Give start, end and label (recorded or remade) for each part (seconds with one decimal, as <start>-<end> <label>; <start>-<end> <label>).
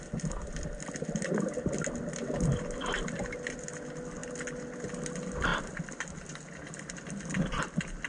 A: 0.0-8.1 recorded